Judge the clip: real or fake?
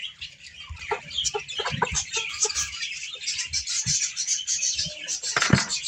fake